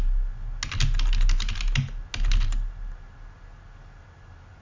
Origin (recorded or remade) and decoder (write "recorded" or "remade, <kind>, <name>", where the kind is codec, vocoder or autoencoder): recorded